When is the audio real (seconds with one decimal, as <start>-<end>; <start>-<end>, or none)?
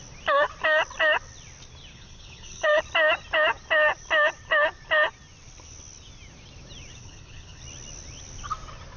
0.0-1.9; 2.8-7.0; 7.6-9.0